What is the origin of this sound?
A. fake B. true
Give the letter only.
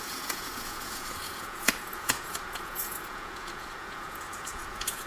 A